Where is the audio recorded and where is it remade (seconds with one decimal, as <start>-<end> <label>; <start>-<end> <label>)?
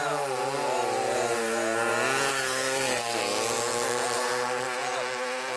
0.0-2.3 recorded; 2.3-3.2 remade; 3.2-5.6 recorded